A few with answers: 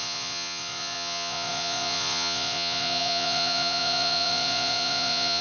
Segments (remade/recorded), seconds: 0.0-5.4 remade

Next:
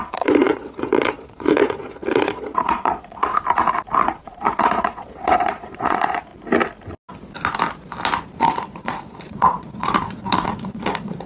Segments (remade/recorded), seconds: 0.0-3.3 remade; 3.3-4.0 recorded; 4.0-6.3 remade; 6.3-8.4 recorded; 8.4-11.3 remade

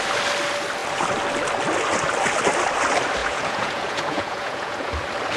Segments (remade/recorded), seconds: 0.0-3.2 recorded; 3.2-4.9 remade; 4.9-5.4 recorded

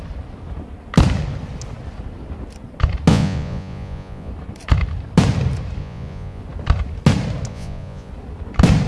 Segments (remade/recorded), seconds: 0.0-3.1 recorded; 3.1-4.3 remade; 4.3-5.8 recorded; 5.8-6.4 remade; 6.4-7.5 recorded; 7.5-8.1 remade; 8.1-8.9 recorded

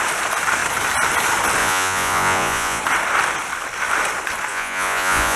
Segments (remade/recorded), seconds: 0.0-1.6 recorded; 1.6-2.8 remade; 2.8-4.5 recorded; 4.5-5.4 remade

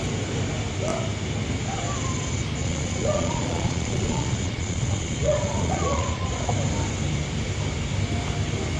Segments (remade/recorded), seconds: 0.0-2.6 recorded; 2.6-6.5 remade; 6.5-8.8 recorded